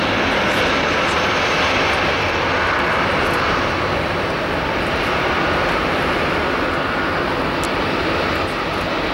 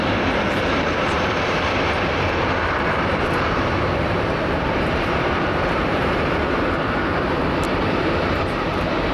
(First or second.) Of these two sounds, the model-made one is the second